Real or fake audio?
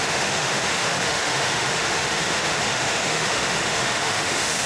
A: fake